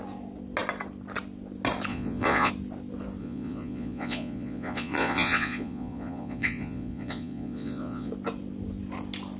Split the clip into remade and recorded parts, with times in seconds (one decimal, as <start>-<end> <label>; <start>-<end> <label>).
0.0-1.9 recorded; 1.9-2.5 remade; 2.5-3.2 recorded; 3.2-8.1 remade; 8.1-9.4 recorded